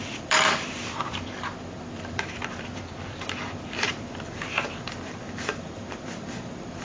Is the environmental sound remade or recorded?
remade